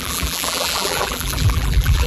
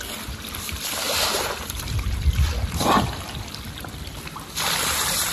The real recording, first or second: second